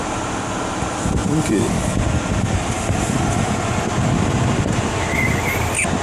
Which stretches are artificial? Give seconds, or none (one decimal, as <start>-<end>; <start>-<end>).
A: none